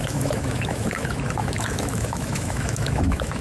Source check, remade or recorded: remade